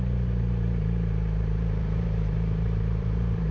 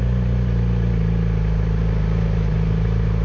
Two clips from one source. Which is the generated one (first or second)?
first